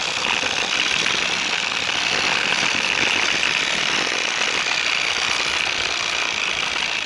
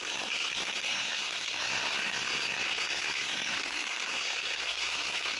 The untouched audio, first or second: first